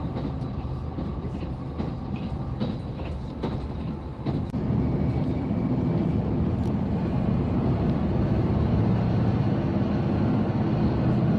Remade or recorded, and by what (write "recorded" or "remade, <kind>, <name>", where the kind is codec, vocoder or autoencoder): recorded